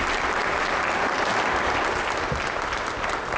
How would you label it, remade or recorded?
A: recorded